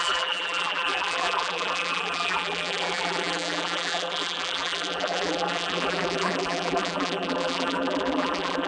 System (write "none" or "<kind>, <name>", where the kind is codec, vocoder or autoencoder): vocoder, BigVGAN v2